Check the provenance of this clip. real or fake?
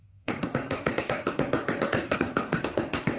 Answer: fake